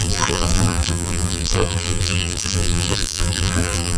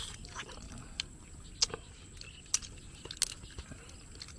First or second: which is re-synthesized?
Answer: first